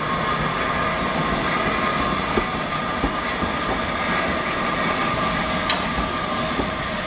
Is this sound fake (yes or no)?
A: no